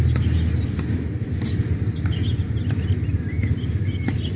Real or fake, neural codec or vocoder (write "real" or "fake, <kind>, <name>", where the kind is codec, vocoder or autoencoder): real